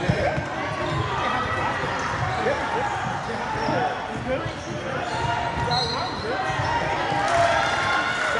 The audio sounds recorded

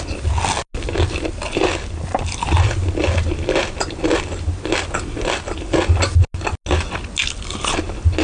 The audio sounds recorded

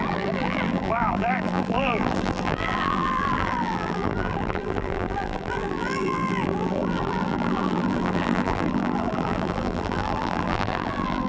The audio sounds remade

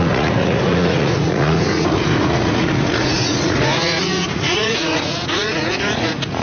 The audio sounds remade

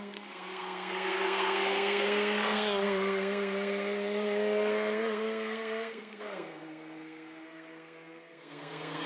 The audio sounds remade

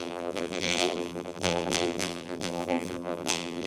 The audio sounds remade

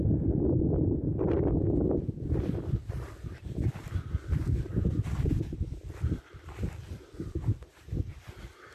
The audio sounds recorded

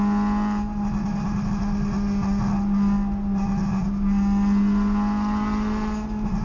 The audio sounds recorded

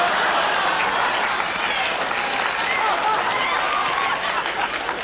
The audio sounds recorded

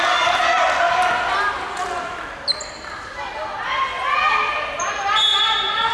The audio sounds recorded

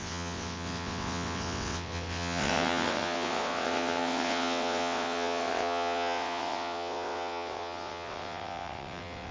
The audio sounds remade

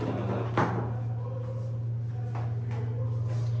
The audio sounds recorded